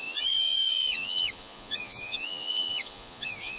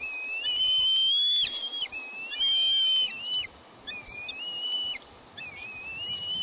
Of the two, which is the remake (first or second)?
first